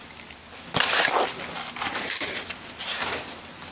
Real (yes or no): yes